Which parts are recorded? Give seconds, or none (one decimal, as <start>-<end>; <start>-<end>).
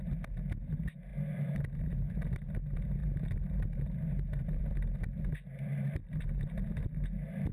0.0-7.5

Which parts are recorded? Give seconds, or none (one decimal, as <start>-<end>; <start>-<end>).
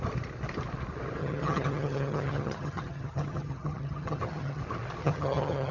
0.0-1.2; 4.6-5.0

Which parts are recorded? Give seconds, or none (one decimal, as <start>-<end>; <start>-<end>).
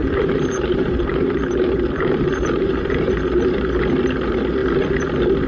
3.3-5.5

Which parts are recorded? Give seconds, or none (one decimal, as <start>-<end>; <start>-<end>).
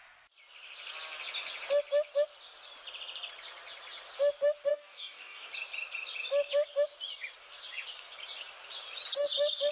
0.0-4.7; 5.5-9.7